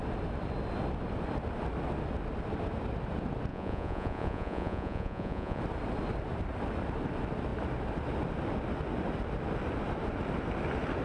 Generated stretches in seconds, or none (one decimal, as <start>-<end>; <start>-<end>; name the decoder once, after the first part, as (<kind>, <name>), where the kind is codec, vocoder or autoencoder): 3.5-5.6 (vocoder, Vocos)